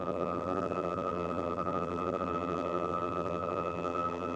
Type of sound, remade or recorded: remade